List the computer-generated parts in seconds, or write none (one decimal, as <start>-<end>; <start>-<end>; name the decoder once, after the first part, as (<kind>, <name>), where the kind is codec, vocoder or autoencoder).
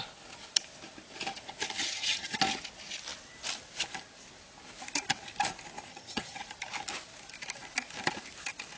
1.8-2.4 (vocoder, HiFi-GAN); 5.9-6.4